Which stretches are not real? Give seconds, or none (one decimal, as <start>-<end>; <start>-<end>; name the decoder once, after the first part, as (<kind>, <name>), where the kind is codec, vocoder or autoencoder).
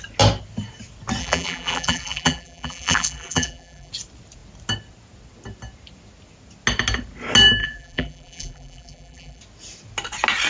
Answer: 1.2-3.9 (vocoder, BigVGAN v2); 7.6-9.4